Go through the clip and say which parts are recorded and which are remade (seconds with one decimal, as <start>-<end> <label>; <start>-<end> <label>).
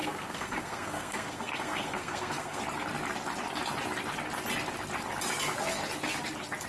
0.0-2.6 remade; 2.6-6.7 recorded